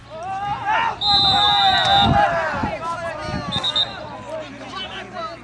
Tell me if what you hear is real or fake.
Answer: real